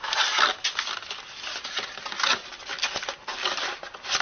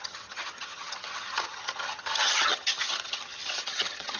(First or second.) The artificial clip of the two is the second